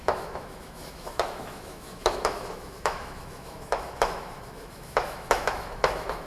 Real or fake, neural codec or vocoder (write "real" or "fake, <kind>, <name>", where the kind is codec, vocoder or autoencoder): fake, autoencoder, DAC-VAE